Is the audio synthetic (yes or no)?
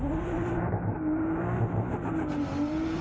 yes